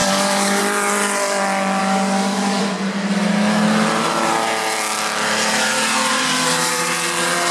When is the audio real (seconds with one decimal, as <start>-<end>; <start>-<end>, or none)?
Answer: 0.6-1.8; 2.6-7.5